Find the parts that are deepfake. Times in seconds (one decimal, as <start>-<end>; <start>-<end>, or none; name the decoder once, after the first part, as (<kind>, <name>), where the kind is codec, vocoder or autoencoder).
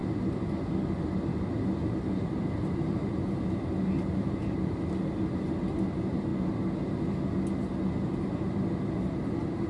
0.8-6.3 (vocoder, BigVGAN v2); 8.2-9.7